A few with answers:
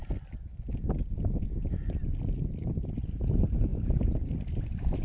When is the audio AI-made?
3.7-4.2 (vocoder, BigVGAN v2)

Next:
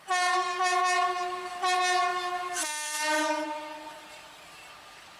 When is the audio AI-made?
2.1-4.7 (vocoder, BigVGAN v2)